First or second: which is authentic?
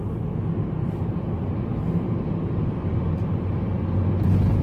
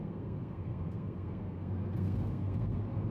first